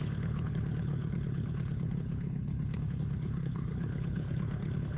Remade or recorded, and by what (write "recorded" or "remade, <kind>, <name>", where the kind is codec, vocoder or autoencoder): remade, codec, HILCodec